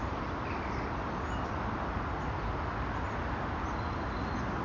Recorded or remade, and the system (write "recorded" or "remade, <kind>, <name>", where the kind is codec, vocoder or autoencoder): recorded